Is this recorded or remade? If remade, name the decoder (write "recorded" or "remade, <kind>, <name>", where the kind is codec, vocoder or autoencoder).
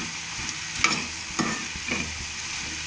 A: recorded